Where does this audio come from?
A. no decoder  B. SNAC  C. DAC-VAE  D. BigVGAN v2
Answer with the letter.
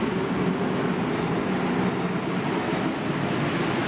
A